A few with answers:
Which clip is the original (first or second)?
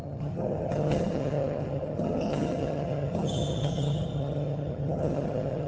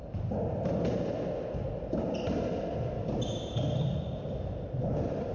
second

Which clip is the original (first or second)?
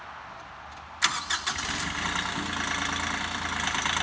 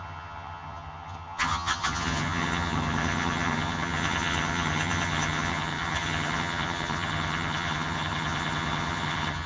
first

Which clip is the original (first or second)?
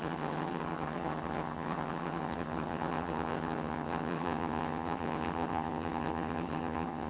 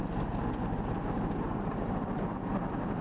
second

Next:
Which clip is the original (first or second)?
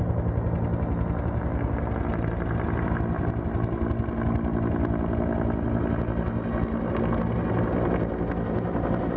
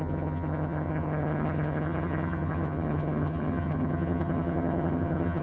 first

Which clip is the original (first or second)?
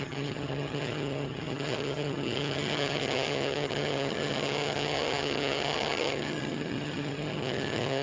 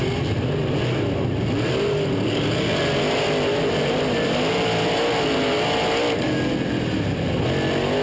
second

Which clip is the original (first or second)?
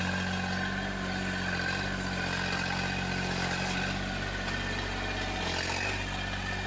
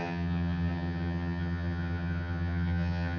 first